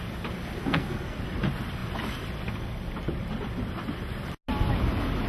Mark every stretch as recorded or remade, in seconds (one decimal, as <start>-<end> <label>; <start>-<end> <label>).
0.0-0.6 recorded; 0.6-1.2 remade; 1.2-5.3 recorded

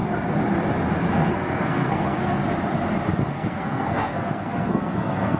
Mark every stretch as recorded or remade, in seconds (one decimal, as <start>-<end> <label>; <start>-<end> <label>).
0.0-1.1 recorded; 1.1-2.4 remade; 2.4-3.3 recorded; 3.3-5.4 remade

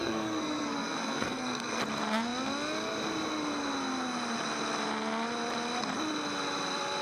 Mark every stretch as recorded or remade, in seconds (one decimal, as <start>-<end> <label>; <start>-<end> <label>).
0.0-1.8 remade; 1.8-7.0 recorded

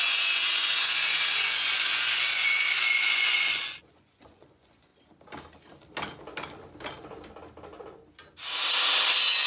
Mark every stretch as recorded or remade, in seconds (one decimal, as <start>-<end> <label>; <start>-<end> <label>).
0.0-4.9 remade; 4.9-9.5 recorded

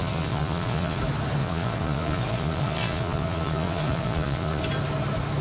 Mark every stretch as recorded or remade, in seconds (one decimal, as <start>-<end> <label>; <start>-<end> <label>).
0.0-1.0 remade; 1.0-1.4 recorded; 1.4-4.6 remade; 4.6-5.4 recorded

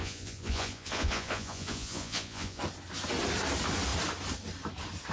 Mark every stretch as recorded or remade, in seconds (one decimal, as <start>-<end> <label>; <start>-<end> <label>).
0.0-2.6 remade; 2.6-5.1 recorded

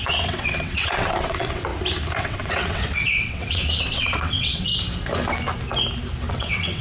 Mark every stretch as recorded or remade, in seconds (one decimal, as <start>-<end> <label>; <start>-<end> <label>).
0.0-1.7 remade; 1.7-2.2 recorded; 2.2-4.7 remade; 4.7-6.3 recorded; 6.3-6.8 remade